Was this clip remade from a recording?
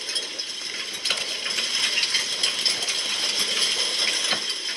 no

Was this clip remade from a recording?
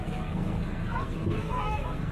yes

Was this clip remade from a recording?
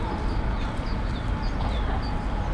no